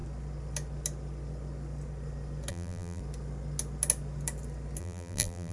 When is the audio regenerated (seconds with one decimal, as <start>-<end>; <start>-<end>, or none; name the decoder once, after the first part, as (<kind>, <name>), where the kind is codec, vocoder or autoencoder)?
2.5-3.0 (vocoder, BigVGAN v2); 4.8-5.5